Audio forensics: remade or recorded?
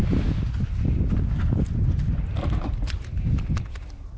recorded